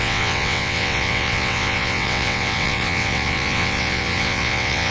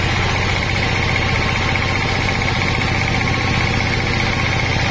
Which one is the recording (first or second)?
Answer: second